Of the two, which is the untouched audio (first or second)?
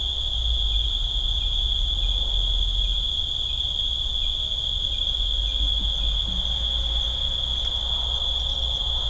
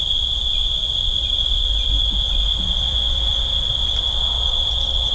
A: first